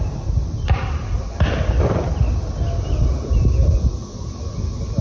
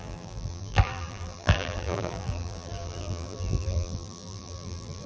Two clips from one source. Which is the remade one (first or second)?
second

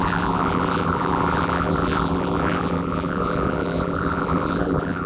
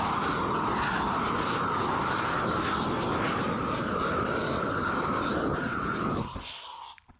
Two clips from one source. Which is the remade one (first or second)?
first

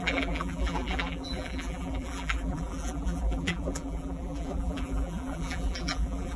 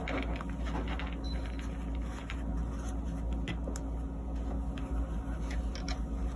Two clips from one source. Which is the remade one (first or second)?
first